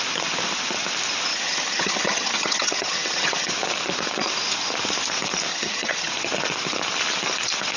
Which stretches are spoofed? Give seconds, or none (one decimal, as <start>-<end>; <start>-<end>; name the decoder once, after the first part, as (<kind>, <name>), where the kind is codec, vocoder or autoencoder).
1.3-3.5 (vocoder, HiFi-GAN); 5.5-6.1